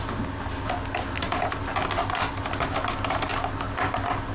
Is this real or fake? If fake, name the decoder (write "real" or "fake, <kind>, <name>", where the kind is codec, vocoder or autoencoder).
real